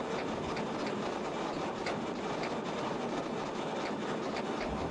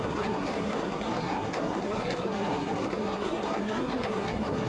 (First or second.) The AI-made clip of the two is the second